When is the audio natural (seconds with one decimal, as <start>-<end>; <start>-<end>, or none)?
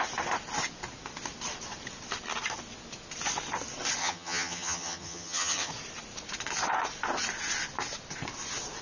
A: 0.0-4.0; 5.7-8.8